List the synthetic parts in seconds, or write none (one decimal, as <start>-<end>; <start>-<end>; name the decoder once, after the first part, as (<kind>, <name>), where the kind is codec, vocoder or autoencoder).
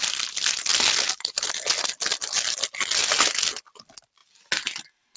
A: none